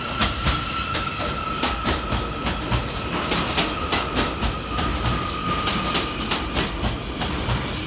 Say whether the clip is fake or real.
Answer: real